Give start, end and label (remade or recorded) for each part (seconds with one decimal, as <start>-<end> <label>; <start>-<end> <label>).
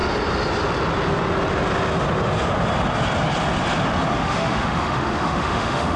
0.0-4.1 recorded; 4.1-6.0 remade